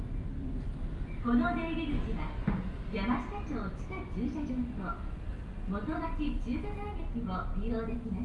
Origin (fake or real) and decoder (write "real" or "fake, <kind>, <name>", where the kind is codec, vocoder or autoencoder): real